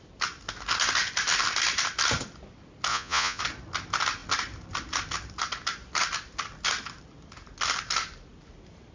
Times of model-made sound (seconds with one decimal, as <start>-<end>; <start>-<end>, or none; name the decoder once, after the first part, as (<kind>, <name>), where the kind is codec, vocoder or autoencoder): 2.9-3.4 (vocoder, Vocos)